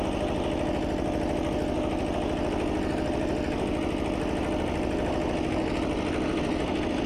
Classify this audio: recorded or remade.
recorded